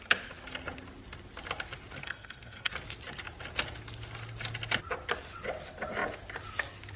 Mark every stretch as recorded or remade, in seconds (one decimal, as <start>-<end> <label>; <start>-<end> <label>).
0.0-2.0 recorded; 2.0-2.7 remade; 2.7-7.0 recorded